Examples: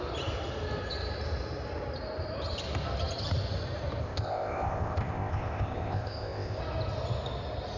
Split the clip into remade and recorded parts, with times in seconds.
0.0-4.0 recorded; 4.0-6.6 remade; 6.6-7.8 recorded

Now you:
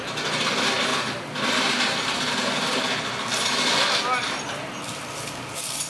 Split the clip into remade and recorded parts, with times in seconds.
0.0-5.9 recorded

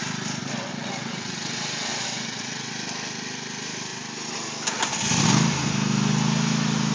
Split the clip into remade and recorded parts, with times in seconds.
0.0-0.4 recorded; 0.4-2.7 remade; 2.7-6.9 recorded